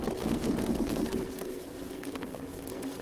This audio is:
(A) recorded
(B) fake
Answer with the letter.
B